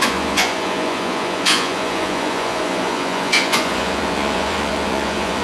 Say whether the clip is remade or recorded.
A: remade